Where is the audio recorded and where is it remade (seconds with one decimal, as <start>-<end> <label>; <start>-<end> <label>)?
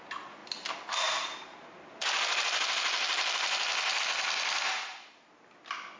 0.0-6.0 recorded